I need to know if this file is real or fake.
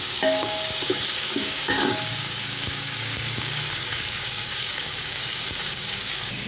fake